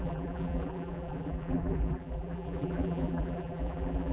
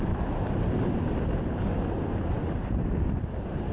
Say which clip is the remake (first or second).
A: first